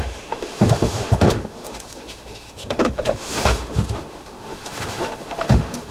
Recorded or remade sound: remade